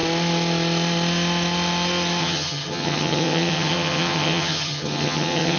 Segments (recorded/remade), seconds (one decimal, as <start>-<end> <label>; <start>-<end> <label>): 0.0-2.2 recorded; 2.2-5.6 remade